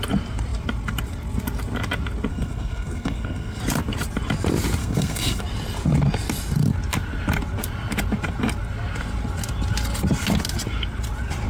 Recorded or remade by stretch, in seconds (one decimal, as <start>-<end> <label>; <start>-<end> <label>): 0.0-2.3 recorded; 2.3-3.6 remade; 3.6-4.8 recorded; 4.8-5.4 remade; 5.4-11.5 recorded